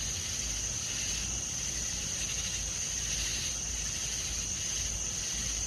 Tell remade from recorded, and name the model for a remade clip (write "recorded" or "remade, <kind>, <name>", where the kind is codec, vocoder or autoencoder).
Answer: recorded